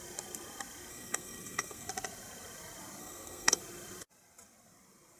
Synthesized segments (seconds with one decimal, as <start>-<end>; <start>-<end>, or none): 0.9-1.9; 3.0-3.6